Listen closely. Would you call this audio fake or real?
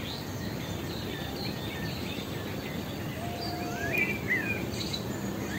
real